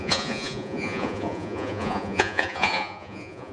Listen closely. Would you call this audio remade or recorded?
remade